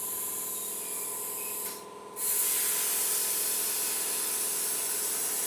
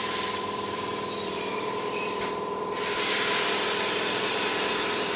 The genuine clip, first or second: first